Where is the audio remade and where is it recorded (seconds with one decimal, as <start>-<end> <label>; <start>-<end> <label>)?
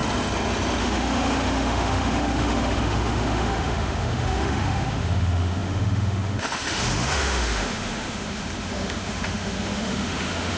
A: 0.0-0.8 recorded; 0.8-10.6 remade